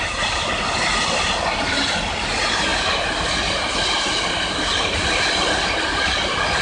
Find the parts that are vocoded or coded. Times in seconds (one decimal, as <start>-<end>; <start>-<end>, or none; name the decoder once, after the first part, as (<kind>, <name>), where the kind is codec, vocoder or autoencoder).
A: none